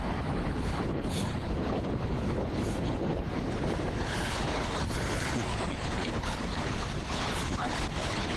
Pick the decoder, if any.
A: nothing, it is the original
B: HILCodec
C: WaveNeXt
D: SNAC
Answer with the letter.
B